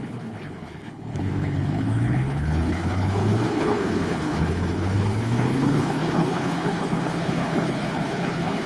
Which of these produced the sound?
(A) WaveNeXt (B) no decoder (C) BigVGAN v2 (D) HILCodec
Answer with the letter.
D